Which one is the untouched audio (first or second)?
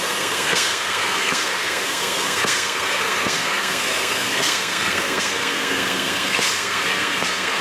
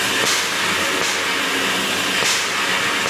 second